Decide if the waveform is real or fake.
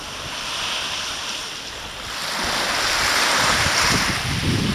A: real